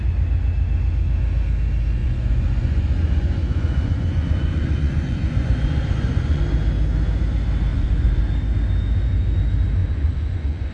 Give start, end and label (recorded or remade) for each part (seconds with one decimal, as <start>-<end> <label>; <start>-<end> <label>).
0.0-2.0 recorded; 2.0-6.4 remade; 6.4-7.7 recorded; 7.7-8.2 remade; 8.2-9.8 recorded; 9.8-10.7 remade

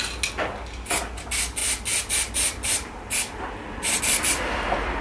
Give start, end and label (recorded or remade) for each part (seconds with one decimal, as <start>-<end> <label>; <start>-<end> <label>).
0.0-5.0 recorded

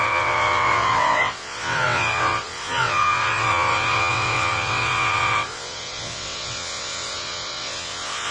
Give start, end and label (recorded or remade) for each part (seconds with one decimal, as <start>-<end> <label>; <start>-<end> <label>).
0.0-8.3 remade

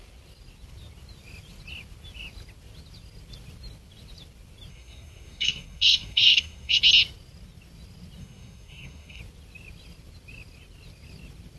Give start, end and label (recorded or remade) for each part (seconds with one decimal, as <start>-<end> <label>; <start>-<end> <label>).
0.0-4.7 recorded; 4.7-6.8 remade; 6.8-8.2 recorded; 8.2-9.2 remade; 9.2-11.6 recorded

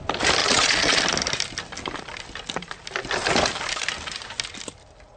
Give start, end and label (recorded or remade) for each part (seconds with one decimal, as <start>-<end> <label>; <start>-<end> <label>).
0.0-0.4 recorded; 0.4-1.0 remade; 1.0-5.2 recorded

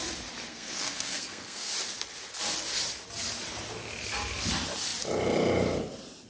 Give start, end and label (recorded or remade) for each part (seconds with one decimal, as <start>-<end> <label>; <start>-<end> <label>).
0.0-0.5 recorded; 0.5-1.7 remade; 1.7-6.3 recorded

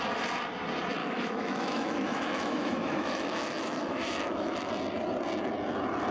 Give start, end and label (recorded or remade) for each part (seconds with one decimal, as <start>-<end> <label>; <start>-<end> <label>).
0.0-1.0 recorded; 1.0-4.7 remade; 4.7-6.1 recorded

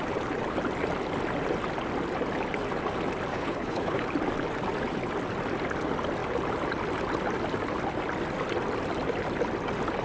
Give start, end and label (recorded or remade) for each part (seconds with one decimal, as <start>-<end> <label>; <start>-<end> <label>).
0.0-3.3 recorded; 3.3-4.0 remade; 4.0-10.0 recorded